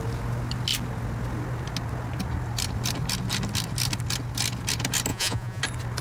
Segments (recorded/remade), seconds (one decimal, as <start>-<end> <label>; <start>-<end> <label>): 0.0-5.1 recorded; 5.1-5.6 remade; 5.6-6.0 recorded